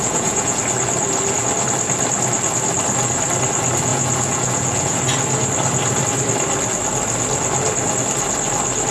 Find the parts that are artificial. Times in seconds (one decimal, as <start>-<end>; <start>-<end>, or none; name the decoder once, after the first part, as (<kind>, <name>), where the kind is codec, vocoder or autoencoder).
0.0-0.6 (vocoder, Vocos); 3.9-5.0